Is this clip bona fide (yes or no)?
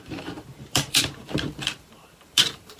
no